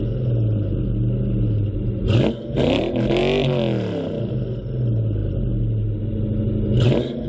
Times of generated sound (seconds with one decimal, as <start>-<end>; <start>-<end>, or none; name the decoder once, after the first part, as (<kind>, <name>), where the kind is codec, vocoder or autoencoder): none